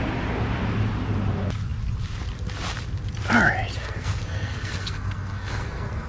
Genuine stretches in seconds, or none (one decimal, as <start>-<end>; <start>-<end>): 0.0-3.8